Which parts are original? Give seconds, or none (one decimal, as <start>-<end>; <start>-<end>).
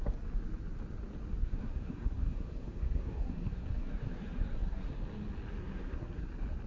0.0-1.4; 4.9-5.6; 6.3-6.7